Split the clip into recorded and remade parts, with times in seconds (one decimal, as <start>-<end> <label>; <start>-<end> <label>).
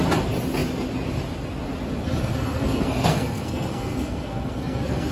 0.0-2.2 recorded; 2.2-5.1 remade